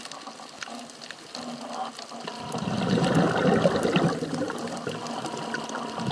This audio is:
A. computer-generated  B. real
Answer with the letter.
B